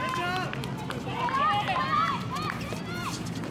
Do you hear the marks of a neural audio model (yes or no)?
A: no